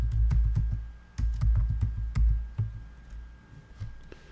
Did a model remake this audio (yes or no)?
no